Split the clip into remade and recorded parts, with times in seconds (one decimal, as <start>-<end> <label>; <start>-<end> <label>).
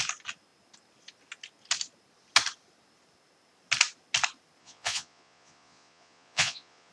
0.0-4.6 recorded; 4.6-6.9 remade